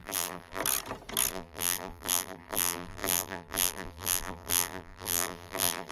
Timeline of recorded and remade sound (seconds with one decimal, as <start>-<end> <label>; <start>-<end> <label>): 0.0-0.6 remade; 0.6-1.3 recorded; 1.3-5.9 remade